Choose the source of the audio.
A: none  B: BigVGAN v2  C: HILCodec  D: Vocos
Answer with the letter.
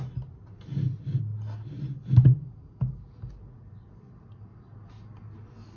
A